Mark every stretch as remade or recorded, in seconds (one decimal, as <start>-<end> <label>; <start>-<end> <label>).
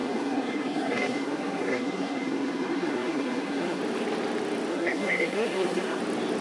0.0-3.8 remade; 3.8-4.7 recorded; 4.7-6.0 remade; 6.0-6.4 recorded